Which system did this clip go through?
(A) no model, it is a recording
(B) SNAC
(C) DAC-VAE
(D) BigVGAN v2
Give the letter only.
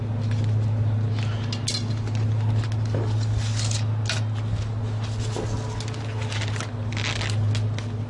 A